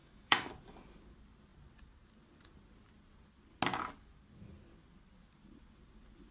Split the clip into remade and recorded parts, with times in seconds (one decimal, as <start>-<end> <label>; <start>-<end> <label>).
0.0-0.5 remade; 0.5-6.3 recorded